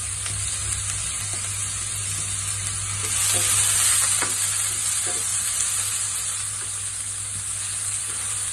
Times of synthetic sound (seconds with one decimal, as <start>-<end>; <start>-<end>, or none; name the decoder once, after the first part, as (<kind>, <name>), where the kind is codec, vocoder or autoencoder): none

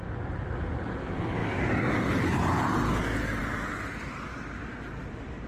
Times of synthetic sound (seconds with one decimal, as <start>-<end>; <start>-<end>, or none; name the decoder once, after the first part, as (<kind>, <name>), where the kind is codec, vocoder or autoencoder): 1.4-2.3 (codec, DAC)

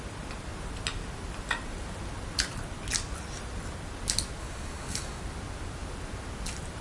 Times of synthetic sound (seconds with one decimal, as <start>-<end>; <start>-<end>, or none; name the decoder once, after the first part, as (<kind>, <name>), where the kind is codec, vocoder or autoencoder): 4.4-5.2 (codec, DAC)

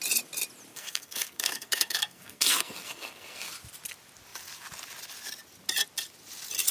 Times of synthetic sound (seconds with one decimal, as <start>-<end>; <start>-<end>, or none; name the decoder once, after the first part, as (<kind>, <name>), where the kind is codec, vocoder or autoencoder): 0.7-3.5 (codec, SNAC)